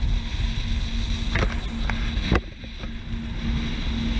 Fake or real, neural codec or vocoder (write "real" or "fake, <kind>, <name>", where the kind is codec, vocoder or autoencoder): real